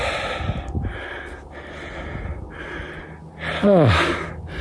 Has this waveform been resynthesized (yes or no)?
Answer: no